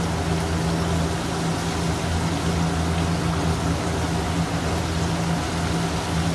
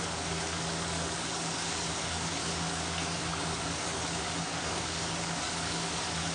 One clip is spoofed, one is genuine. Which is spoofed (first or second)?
second